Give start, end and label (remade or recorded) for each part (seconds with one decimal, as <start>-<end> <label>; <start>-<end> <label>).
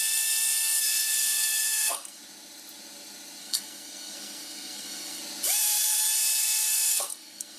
0.0-2.2 remade; 2.2-3.4 recorded; 3.4-5.2 remade; 5.2-6.4 recorded; 6.4-7.6 remade